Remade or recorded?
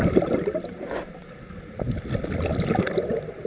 recorded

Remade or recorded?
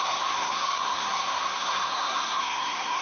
remade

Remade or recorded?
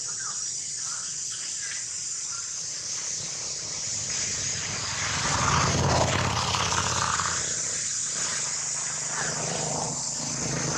remade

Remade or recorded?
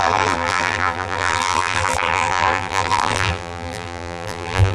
remade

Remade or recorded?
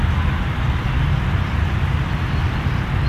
recorded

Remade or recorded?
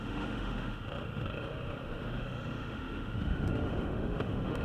remade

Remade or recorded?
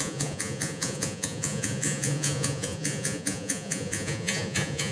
remade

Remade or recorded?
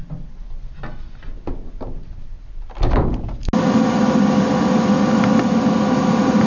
recorded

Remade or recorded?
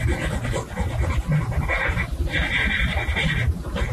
recorded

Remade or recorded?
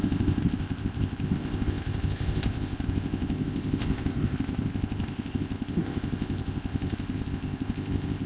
remade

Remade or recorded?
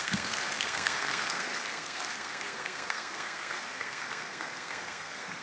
remade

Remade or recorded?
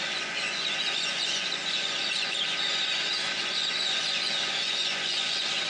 remade